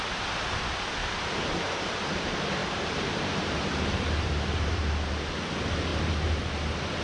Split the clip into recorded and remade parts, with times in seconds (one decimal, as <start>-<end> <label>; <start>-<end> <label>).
0.0-1.0 recorded; 1.0-2.1 remade; 2.1-2.6 recorded; 2.6-4.9 remade; 4.9-5.9 recorded; 5.9-6.5 remade; 6.5-7.0 recorded